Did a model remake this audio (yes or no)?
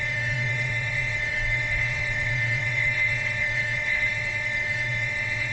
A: yes